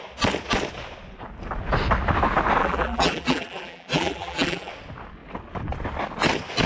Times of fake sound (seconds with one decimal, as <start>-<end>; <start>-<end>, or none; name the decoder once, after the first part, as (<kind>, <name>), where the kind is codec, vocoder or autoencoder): 2.6-4.7 (vocoder, BigVGAN v2)